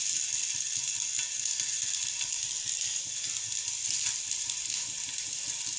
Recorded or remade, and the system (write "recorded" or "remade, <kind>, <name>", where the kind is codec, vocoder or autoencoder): recorded